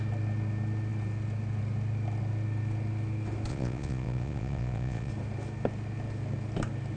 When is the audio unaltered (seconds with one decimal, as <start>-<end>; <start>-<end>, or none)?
0.0-3.5; 5.1-7.0